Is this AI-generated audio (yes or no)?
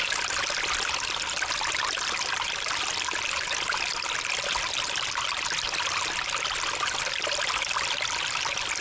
no